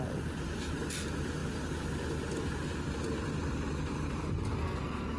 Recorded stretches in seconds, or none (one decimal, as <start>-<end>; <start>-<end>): 0.0-4.6